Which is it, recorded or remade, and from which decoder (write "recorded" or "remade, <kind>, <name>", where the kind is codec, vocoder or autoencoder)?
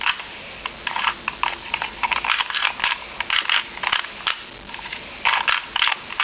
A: recorded